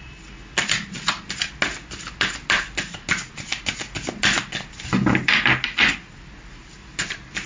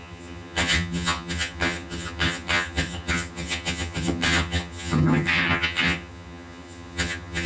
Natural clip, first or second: first